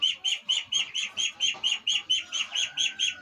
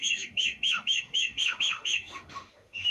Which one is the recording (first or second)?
first